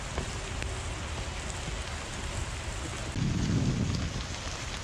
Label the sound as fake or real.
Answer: real